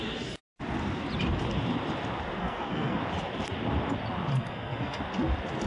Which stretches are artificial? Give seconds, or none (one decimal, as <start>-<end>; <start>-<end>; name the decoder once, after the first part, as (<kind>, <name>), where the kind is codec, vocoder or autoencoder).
2.4-3.0 (codec, SNAC); 4.3-5.0